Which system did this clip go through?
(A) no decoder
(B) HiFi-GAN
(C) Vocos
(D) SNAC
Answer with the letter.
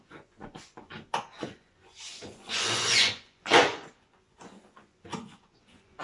C